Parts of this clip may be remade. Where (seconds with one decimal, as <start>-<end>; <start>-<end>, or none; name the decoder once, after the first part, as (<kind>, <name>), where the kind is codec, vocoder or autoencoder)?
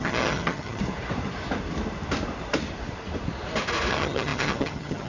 0.0-0.8 (vocoder, HiFi-GAN); 3.9-5.1